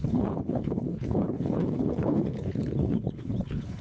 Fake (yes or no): yes